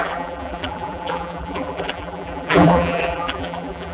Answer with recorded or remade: remade